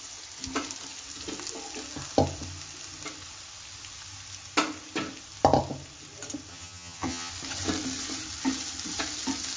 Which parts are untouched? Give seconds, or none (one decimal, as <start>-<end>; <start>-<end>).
0.0-6.5; 7.3-9.6